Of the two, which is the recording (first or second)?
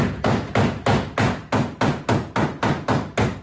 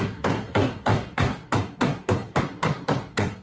first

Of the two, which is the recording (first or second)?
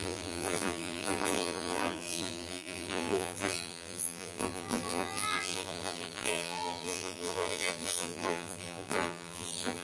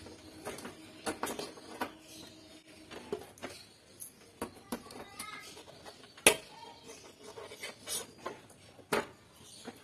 second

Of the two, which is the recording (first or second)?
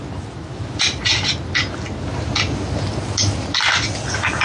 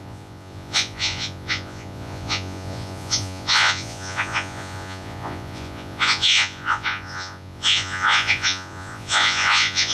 first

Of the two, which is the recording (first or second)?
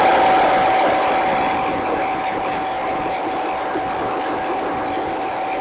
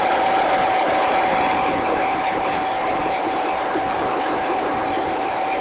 first